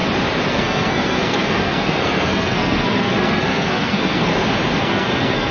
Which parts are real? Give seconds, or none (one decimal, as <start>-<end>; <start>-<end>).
0.0-0.5; 4.3-4.8